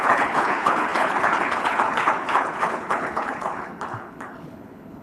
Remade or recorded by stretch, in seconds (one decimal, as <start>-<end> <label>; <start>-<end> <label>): 0.0-5.0 remade